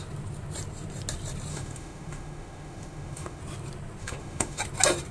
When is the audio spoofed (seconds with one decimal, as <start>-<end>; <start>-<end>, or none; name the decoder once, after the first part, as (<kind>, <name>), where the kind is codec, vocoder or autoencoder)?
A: 1.5-3.4 (autoencoder, DAC-VAE); 4.0-4.6